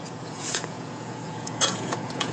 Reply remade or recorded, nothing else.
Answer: remade